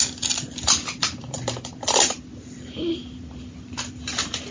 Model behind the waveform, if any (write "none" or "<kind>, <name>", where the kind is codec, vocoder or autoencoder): none